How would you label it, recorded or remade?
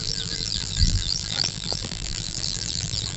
remade